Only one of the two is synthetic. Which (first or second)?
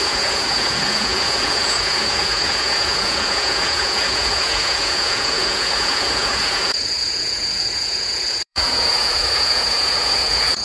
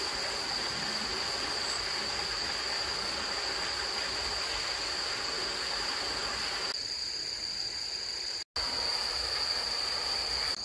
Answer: first